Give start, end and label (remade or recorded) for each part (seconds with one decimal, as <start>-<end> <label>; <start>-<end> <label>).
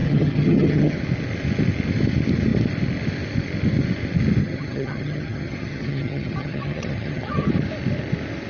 0.0-1.0 remade; 1.0-4.4 recorded; 4.4-7.5 remade; 7.5-8.5 recorded